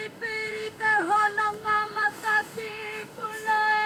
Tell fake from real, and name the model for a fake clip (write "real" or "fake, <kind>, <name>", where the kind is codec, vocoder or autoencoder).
fake, autoencoder, DAC-VAE